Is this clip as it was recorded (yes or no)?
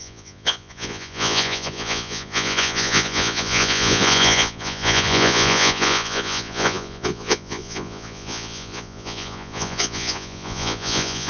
no